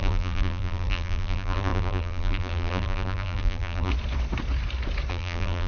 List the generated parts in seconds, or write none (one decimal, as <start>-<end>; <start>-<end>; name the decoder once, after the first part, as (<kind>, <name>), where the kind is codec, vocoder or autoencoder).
0.0-3.9 (vocoder, BigVGAN v2); 5.1-5.7

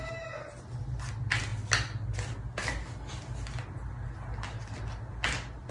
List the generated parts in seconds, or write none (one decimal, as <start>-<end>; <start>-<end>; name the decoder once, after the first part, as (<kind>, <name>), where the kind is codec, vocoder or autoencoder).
none